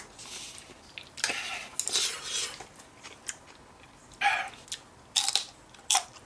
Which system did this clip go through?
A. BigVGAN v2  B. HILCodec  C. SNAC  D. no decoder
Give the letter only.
D